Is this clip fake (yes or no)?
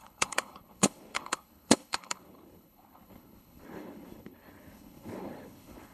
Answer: yes